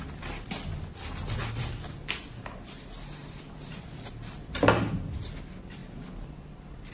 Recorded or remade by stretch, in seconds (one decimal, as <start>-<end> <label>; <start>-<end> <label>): 0.0-1.4 recorded; 1.4-2.3 remade; 2.3-3.2 recorded; 3.2-4.1 remade; 4.1-5.8 recorded; 5.8-6.9 remade